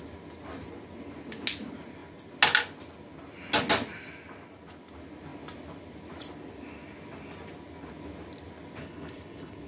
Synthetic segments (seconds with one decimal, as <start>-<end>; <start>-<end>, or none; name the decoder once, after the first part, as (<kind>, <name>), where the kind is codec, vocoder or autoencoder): 8.8-9.7 (codec, HILCodec)